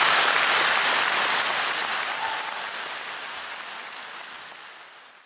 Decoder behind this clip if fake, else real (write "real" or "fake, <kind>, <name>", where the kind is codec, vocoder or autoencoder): real